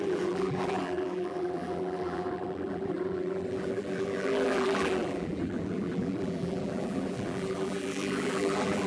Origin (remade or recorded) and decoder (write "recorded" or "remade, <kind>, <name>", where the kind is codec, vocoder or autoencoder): remade, vocoder, BigVGAN v2